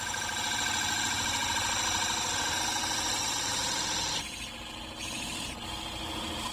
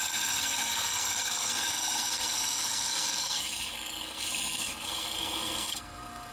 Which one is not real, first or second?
second